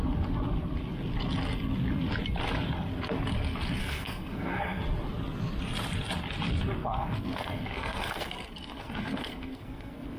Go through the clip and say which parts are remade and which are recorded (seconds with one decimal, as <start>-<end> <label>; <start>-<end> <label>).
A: 0.0-3.8 recorded; 3.8-4.8 remade; 4.8-6.8 recorded; 6.8-10.2 remade